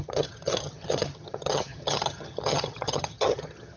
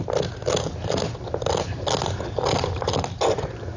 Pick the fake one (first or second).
first